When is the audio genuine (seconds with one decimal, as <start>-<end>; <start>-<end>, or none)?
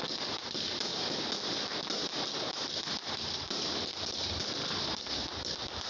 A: 0.0-5.9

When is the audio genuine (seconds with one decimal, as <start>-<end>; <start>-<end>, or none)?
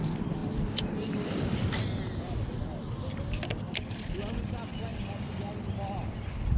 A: 0.0-6.6